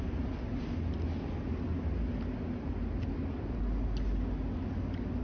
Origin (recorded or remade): recorded